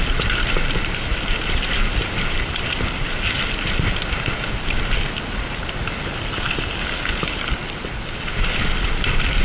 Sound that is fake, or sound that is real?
real